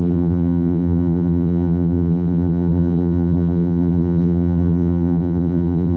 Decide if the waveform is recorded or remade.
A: remade